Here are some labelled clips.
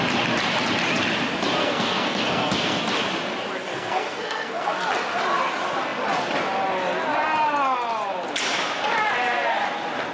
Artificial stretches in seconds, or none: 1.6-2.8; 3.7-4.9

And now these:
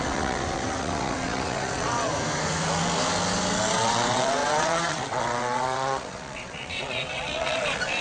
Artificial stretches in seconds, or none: 0.0-2.1; 3.7-8.0

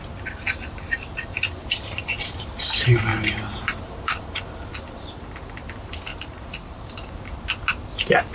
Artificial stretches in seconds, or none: 1.6-4.7; 6.1-7.1

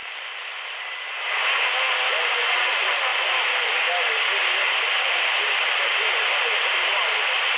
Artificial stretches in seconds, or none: none

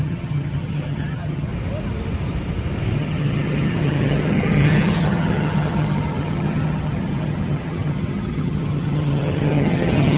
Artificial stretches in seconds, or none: 0.0-1.5; 3.0-10.2

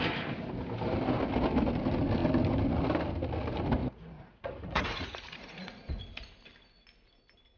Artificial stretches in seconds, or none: 3.8-6.0

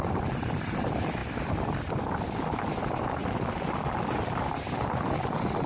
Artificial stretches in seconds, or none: 1.2-2.2; 3.2-3.9